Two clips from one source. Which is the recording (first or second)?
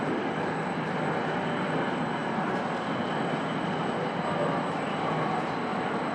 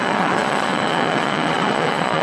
first